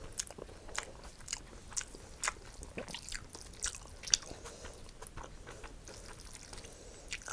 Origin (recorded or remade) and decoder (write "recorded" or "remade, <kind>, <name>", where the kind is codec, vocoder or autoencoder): recorded